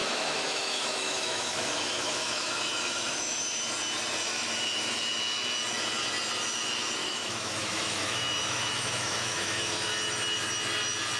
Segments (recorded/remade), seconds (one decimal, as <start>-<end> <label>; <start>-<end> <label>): 0.0-3.4 remade; 3.4-7.0 recorded; 7.0-9.9 remade; 9.9-11.2 recorded